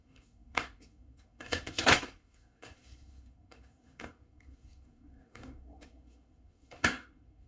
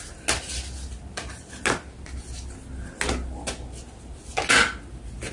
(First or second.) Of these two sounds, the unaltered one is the second